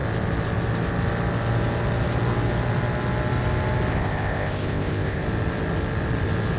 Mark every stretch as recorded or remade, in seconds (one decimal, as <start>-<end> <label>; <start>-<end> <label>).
0.0-3.9 recorded; 3.9-5.2 remade; 5.2-6.6 recorded